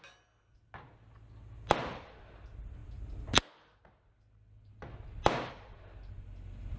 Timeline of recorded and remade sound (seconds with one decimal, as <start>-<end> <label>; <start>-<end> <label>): 0.0-6.8 recorded